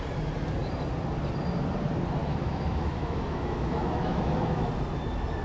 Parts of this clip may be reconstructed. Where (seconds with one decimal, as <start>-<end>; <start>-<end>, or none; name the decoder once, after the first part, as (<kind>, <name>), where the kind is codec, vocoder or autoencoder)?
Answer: 2.2-4.7 (autoencoder, DAC-VAE)